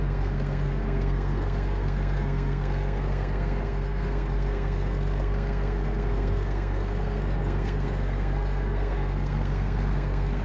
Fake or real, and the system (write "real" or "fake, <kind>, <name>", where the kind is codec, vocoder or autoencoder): fake, codec, SNAC